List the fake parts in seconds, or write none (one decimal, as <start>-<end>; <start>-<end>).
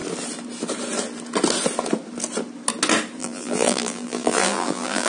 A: 3.2-5.1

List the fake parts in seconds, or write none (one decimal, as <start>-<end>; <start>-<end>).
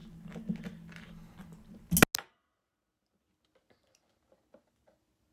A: none